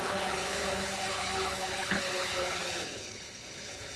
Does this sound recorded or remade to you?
remade